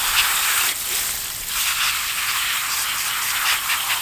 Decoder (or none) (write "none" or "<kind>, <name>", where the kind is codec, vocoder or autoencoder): none